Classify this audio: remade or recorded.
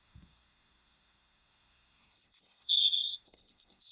remade